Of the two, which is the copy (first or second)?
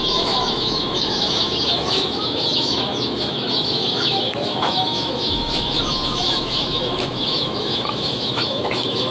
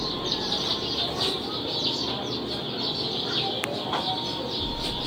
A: first